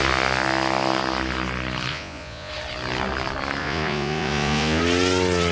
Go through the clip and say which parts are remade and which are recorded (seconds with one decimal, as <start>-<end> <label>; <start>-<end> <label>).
0.0-1.9 recorded; 1.9-2.5 remade; 2.5-3.6 recorded; 3.6-4.8 remade; 4.8-5.5 recorded